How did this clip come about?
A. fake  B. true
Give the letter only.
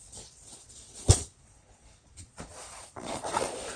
A